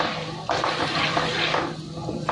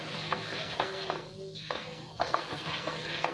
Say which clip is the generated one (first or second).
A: second